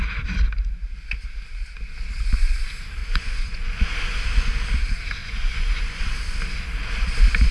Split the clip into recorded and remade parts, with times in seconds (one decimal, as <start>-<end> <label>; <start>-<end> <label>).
0.0-3.0 recorded; 3.0-3.8 remade; 3.8-5.2 recorded; 5.2-6.0 remade; 6.0-7.5 recorded